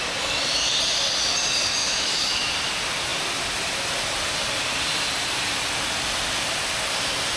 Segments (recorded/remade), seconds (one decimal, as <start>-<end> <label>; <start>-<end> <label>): 0.0-1.8 recorded; 1.8-2.5 remade; 2.5-7.4 recorded